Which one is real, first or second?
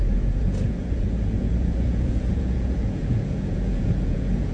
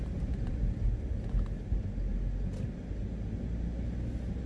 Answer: second